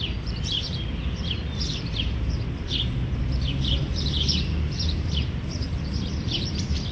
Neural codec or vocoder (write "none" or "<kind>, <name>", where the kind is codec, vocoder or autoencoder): vocoder, BigVGAN v2